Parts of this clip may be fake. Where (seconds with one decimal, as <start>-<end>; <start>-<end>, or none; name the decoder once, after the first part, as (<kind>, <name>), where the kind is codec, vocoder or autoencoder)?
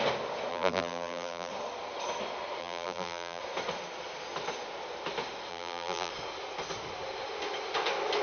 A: 0.5-1.5 (vocoder, BigVGAN v2); 2.6-3.4; 5.5-6.1